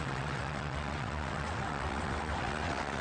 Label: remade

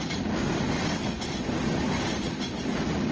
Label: recorded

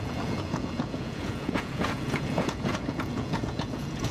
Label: remade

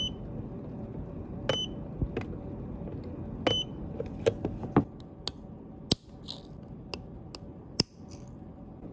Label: recorded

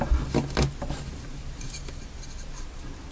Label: recorded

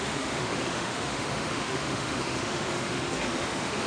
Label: remade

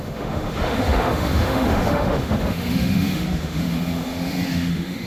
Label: remade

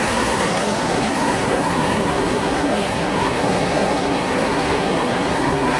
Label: remade